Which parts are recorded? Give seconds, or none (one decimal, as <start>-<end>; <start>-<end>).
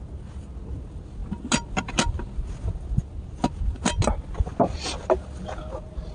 0.0-6.1